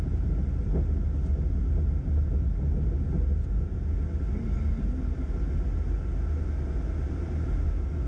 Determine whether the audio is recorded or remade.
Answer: recorded